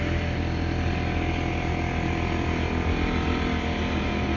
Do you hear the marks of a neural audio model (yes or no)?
no